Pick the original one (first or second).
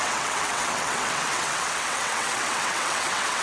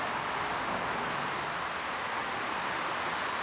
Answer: second